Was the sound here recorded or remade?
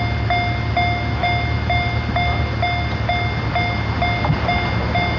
recorded